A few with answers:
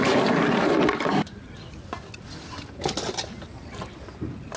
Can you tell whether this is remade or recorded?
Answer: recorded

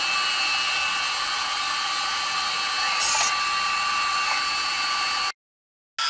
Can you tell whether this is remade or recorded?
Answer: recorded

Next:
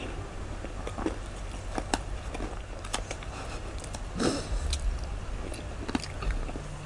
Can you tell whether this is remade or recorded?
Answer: recorded